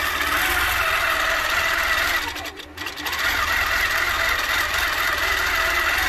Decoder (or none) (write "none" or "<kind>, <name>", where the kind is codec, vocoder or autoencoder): none